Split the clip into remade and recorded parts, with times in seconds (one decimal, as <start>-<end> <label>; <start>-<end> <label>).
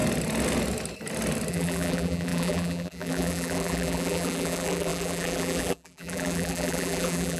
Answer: 0.0-1.5 recorded; 1.5-7.4 remade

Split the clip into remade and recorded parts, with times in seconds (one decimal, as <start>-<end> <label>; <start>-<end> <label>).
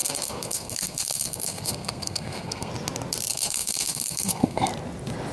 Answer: 0.0-2.7 remade; 2.7-3.3 recorded; 3.3-4.7 remade; 4.7-5.3 recorded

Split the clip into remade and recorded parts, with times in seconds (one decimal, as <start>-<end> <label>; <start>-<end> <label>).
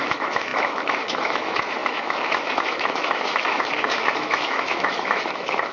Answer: 0.0-5.7 remade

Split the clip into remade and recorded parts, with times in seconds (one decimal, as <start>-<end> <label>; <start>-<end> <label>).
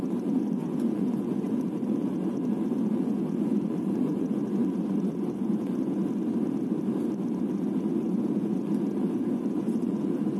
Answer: 0.0-6.0 remade; 6.0-7.4 recorded; 7.4-10.4 remade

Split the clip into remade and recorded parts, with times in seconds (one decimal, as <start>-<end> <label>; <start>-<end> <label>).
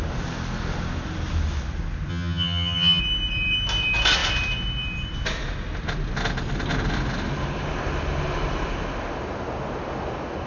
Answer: 0.0-2.1 recorded; 2.1-3.0 remade; 3.0-10.5 recorded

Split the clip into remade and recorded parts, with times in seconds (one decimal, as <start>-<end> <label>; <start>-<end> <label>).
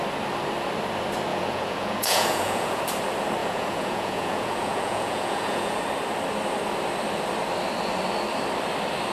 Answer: 0.0-1.3 recorded; 1.3-2.8 remade; 2.8-3.4 recorded; 3.4-5.8 remade; 5.8-9.1 recorded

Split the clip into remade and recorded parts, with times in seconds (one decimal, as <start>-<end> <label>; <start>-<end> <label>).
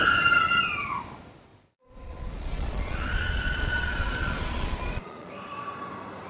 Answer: 0.0-1.5 recorded; 1.5-5.3 remade; 5.3-6.3 recorded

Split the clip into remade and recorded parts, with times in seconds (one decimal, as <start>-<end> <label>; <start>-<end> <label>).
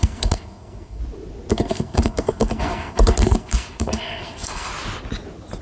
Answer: 0.0-1.0 remade; 1.0-1.5 recorded; 1.5-4.7 remade; 4.7-5.6 recorded